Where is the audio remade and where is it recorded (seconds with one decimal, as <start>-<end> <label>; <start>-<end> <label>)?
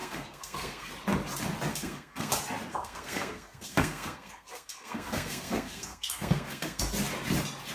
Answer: 0.0-0.9 remade; 0.9-1.7 recorded; 1.7-2.3 remade; 2.3-2.7 recorded; 2.7-6.8 remade; 6.8-7.7 recorded